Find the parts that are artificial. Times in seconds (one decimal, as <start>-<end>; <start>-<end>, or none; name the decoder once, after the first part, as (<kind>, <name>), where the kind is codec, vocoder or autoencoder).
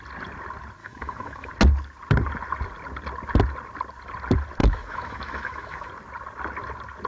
0.8-1.5 (autoencoder, DAC-VAE); 4.6-5.9